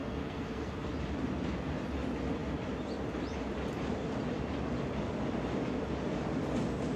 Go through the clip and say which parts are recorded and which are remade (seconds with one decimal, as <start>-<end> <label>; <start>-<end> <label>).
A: 0.0-0.9 remade; 0.9-7.0 recorded